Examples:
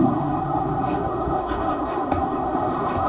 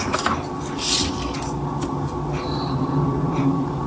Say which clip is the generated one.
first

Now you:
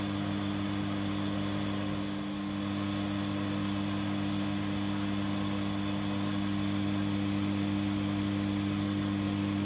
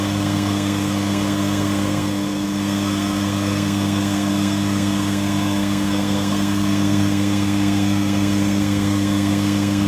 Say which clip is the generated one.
second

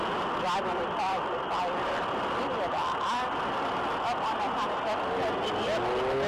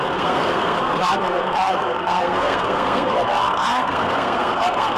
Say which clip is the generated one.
second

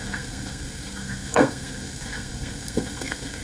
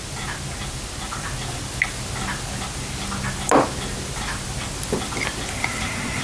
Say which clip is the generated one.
first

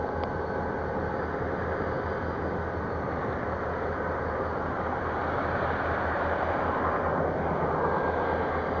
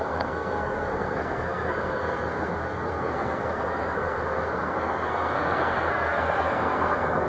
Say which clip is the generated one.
second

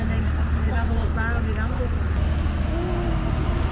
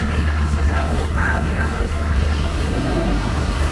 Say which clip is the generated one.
second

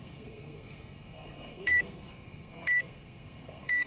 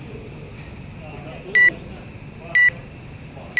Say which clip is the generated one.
first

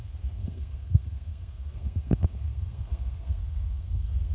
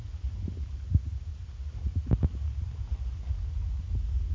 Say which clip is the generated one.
first